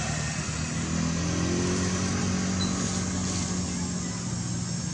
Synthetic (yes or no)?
no